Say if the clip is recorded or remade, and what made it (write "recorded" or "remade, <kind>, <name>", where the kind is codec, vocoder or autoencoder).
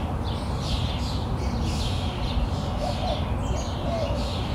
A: recorded